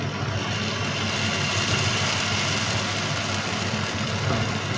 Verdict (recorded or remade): recorded